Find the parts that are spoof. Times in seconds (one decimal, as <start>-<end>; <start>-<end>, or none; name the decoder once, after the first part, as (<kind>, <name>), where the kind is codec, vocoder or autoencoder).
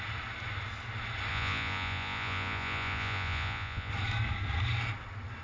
1.3-3.9 (vocoder, Vocos)